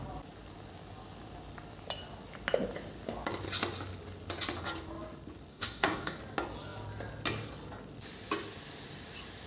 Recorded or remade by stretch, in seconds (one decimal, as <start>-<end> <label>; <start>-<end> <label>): 0.0-5.5 recorded; 5.5-6.2 remade; 6.2-9.5 recorded